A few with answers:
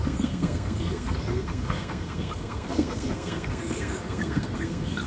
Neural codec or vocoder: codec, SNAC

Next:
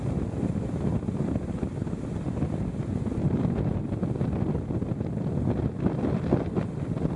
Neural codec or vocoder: none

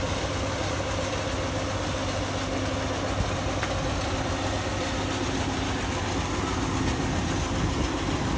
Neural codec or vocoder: none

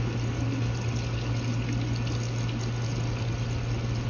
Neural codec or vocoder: none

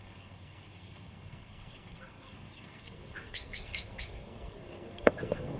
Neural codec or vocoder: codec, SNAC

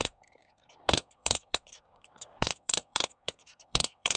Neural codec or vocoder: codec, SNAC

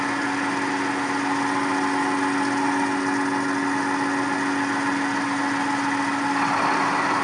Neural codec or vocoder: none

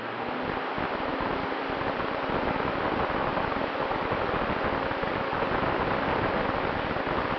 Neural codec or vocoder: none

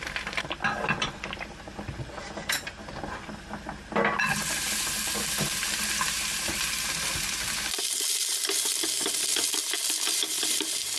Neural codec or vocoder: none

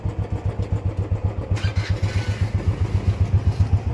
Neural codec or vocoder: none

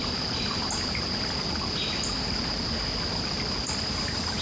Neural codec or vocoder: none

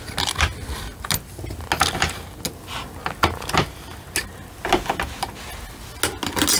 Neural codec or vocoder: none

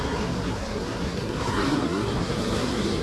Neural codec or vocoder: codec, SNAC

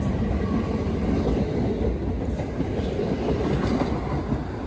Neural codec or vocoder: none